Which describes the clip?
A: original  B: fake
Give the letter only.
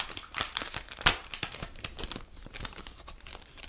B